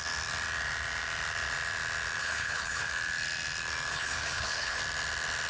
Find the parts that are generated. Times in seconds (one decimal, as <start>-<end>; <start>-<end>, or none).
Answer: 2.2-2.9; 3.9-4.8